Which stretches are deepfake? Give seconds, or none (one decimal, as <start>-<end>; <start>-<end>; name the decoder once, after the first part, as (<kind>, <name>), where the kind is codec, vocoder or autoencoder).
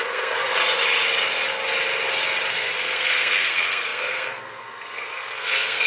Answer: 0.0-0.5 (codec, SNAC); 2.5-5.9